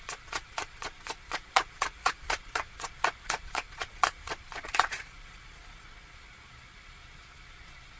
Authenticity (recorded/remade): remade